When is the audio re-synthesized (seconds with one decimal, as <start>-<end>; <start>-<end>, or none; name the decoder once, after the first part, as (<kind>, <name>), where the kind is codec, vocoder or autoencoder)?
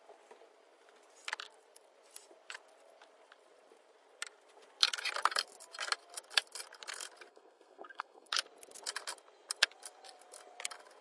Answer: 7.3-8.3 (codec, SNAC)